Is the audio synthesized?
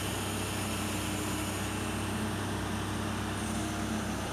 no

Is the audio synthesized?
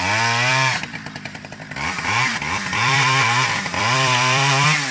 yes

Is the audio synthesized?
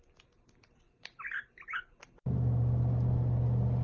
no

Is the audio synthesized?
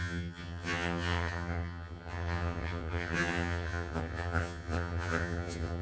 yes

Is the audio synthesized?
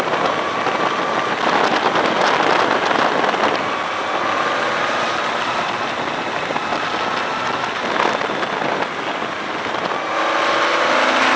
no